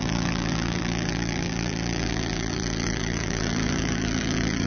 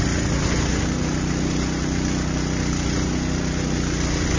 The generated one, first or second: first